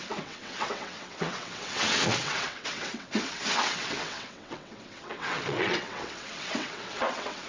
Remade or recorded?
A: remade